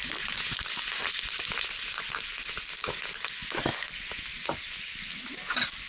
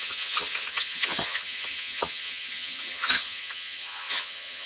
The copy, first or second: second